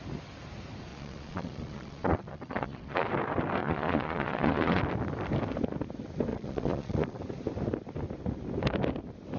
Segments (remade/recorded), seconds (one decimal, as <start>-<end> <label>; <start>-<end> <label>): 0.0-0.9 recorded; 0.9-3.1 remade; 3.1-3.6 recorded; 3.6-4.8 remade; 4.8-6.3 recorded; 6.3-7.2 remade; 7.2-9.4 recorded